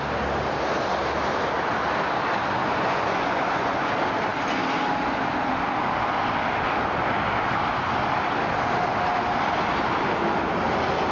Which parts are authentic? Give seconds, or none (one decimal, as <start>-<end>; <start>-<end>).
0.0-2.6; 3.9-11.1

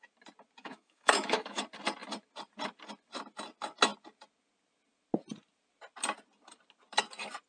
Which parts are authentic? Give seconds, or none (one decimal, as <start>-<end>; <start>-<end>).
0.0-0.6; 1.6-7.5

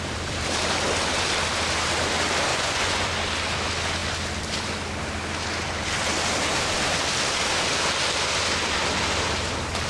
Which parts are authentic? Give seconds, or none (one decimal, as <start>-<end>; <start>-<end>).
0.0-2.5; 3.1-9.9

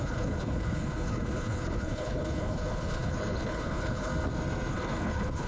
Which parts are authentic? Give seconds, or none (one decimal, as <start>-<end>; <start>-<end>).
4.1-4.7

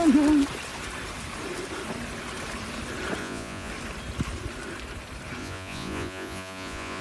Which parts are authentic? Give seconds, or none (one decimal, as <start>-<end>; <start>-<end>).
0.0-3.2; 3.7-5.4

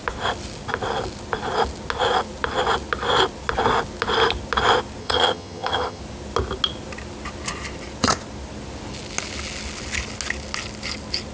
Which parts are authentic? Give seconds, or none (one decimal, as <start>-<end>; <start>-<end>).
0.0-5.0; 6.0-11.3

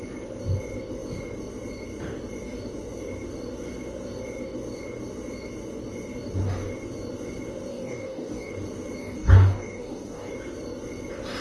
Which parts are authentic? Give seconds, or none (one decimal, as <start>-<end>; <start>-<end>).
0.0-7.7; 8.5-9.0; 10.3-11.4

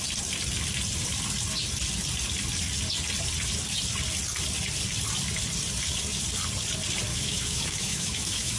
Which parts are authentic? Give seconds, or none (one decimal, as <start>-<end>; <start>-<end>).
0.0-7.1